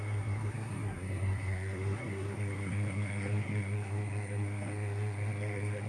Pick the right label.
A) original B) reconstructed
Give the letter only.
B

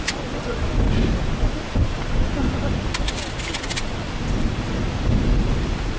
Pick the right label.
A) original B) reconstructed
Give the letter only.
A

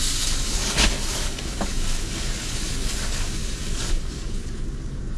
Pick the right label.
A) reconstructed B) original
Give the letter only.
A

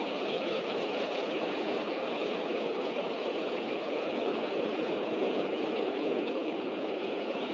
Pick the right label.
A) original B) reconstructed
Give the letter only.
B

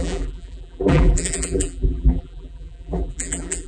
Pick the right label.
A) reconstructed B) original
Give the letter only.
A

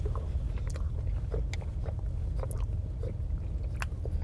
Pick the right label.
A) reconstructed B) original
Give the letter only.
B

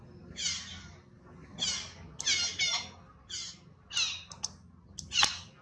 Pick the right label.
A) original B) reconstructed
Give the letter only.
A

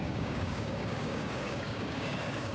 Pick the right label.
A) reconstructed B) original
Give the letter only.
A